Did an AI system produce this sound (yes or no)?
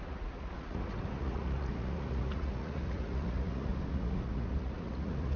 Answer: yes